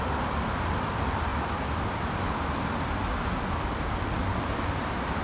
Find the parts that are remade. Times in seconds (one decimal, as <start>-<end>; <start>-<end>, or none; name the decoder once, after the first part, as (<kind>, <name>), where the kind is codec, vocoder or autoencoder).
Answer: none